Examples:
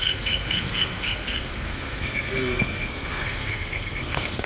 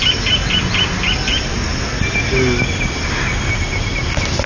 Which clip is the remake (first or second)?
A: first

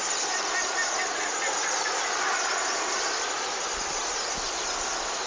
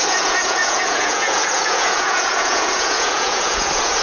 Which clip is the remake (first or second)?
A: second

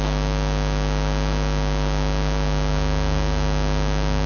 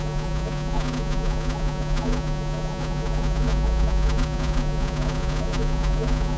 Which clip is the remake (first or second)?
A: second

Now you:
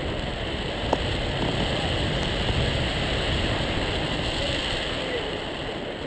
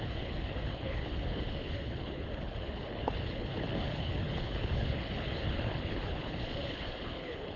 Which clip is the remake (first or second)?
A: second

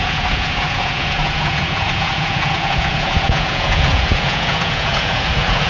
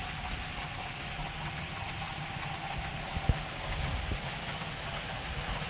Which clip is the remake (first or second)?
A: first